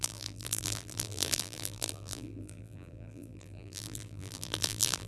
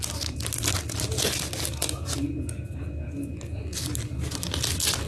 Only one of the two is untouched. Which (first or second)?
second